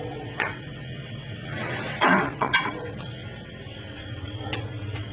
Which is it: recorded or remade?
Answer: remade